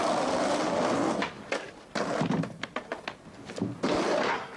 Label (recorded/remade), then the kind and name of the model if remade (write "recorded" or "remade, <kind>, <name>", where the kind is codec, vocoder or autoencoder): recorded